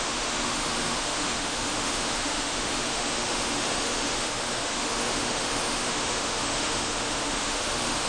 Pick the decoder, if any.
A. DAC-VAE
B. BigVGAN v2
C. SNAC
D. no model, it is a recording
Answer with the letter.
A